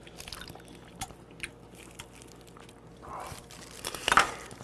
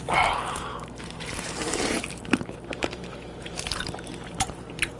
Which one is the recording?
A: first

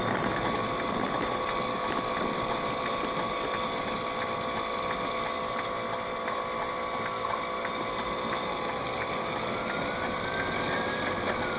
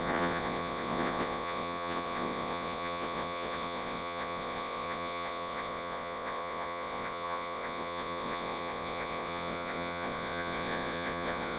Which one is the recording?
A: first